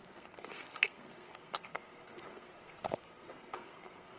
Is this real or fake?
fake